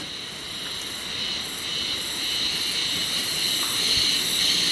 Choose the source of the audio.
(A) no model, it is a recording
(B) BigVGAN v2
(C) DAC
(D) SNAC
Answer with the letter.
A